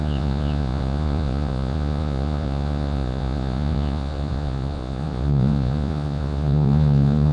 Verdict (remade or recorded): remade